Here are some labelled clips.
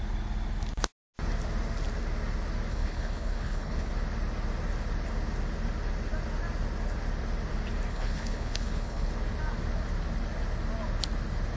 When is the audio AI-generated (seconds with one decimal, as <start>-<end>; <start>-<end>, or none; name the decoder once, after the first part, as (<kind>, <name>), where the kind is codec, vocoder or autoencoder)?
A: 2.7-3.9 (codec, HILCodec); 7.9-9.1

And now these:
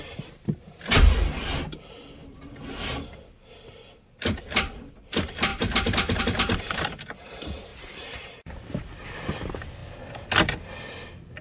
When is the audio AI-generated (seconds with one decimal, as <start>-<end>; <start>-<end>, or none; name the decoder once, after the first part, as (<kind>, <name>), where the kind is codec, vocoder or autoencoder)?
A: 7.7-8.7 (vocoder, BigVGAN v2)

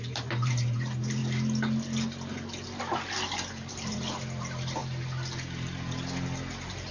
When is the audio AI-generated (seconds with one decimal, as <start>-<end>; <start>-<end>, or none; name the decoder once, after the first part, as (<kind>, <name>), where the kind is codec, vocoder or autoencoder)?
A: 0.0-1.2 (vocoder, BigVGAN v2); 3.5-4.8; 6.5-6.9

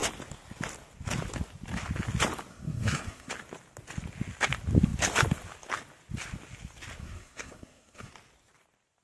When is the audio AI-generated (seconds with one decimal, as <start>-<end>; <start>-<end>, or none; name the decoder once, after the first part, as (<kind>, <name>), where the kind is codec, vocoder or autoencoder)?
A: 2.5-3.3 (codec, SNAC); 7.0-8.1